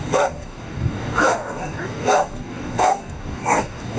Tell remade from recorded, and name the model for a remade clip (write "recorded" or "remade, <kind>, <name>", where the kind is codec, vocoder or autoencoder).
remade, codec, DAC